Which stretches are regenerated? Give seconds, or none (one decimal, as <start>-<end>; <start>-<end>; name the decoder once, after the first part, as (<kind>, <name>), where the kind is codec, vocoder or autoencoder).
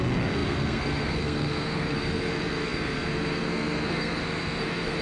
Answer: 0.0-5.0 (codec, SNAC)